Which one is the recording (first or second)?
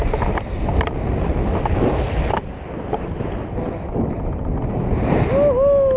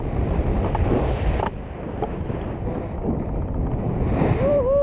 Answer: first